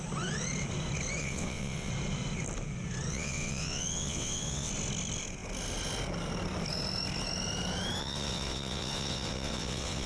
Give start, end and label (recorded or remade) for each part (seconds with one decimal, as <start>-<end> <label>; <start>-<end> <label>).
0.0-1.2 recorded; 1.2-1.9 remade; 1.9-3.1 recorded; 3.1-4.7 remade; 4.7-8.0 recorded; 8.0-10.1 remade